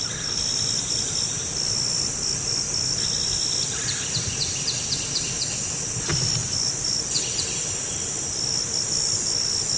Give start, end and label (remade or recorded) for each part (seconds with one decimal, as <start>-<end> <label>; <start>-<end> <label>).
0.0-9.8 recorded